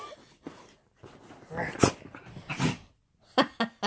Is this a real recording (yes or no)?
yes